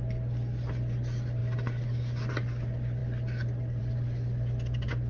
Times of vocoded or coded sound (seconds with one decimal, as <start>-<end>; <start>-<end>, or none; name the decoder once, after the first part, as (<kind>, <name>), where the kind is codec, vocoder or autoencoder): none